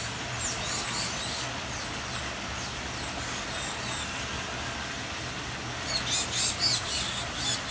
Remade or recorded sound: recorded